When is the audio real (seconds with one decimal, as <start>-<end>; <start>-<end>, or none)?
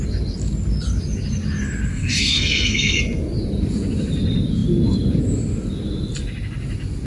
0.0-1.9; 3.0-7.1